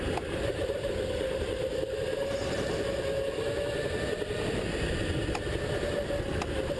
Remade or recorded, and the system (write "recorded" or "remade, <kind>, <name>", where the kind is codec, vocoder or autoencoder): recorded